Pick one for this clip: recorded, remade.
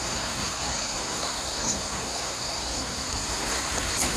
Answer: remade